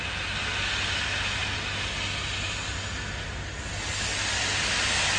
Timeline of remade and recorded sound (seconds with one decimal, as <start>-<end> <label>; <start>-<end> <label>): 0.0-5.2 recorded